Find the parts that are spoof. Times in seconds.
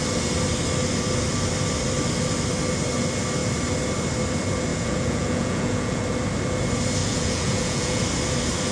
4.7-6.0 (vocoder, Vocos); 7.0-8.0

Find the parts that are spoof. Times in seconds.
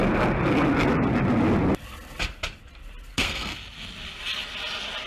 3.1-3.5 (codec, SNAC)